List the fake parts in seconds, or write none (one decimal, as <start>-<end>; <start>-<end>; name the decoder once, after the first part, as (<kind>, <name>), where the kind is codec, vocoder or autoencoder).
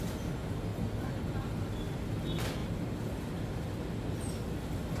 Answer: 2.6-3.4 (vocoder, BigVGAN v2)